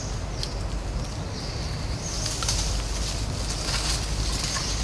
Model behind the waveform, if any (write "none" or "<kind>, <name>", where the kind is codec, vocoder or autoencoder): none